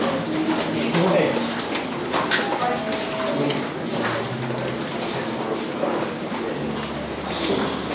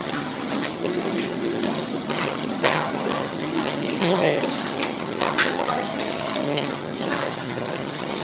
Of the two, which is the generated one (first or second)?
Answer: second